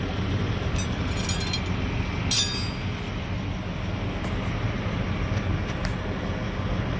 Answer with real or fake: real